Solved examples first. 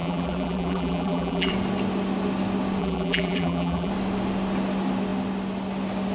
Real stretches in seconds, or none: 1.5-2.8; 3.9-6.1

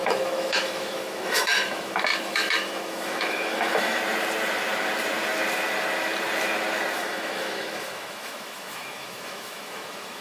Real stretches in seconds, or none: 4.0-7.0

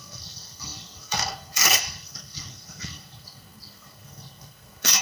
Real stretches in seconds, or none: none

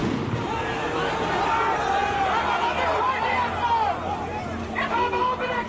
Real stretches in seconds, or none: 0.0-5.7

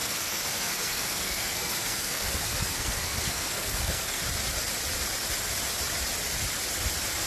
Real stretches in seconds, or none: 4.2-7.3